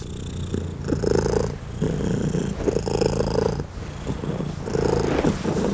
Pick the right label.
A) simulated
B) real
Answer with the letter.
B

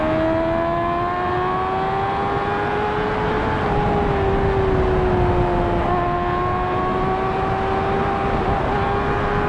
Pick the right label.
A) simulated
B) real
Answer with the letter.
B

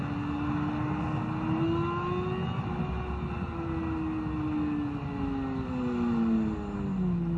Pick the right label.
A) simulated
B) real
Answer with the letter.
B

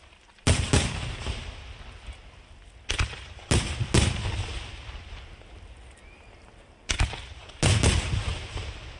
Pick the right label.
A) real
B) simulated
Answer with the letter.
A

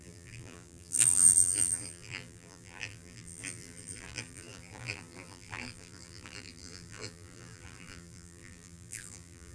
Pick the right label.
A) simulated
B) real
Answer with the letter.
A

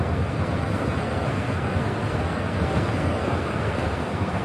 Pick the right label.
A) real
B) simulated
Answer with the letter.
B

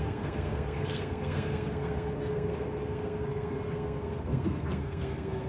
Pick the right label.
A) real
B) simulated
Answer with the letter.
B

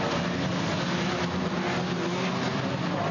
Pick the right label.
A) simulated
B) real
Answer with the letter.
B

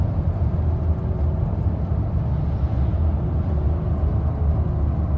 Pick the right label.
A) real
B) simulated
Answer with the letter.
A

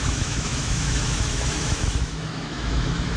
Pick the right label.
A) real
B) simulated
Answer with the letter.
B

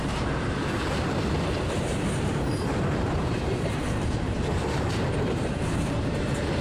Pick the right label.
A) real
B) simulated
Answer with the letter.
B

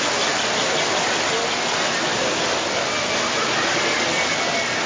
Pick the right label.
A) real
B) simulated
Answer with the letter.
A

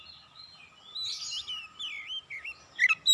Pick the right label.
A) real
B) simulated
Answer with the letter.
A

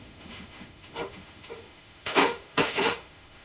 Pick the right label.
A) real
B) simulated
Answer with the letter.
B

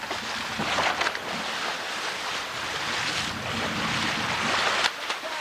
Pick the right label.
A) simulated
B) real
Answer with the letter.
B